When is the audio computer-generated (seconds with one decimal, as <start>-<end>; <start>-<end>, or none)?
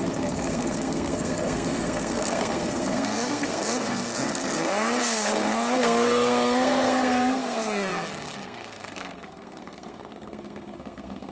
0.0-11.3